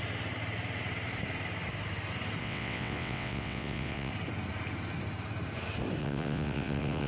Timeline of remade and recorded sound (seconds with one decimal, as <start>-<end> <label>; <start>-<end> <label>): 0.0-2.4 recorded; 2.4-4.1 remade; 4.1-6.0 recorded; 6.0-7.1 remade